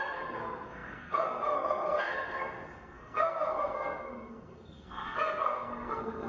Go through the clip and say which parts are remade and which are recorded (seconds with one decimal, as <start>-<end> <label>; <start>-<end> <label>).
0.0-6.3 remade